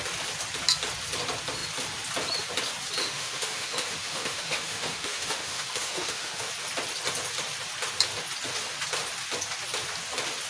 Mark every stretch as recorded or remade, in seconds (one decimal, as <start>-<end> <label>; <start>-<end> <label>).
0.0-3.0 recorded; 3.0-6.5 remade; 6.5-10.5 recorded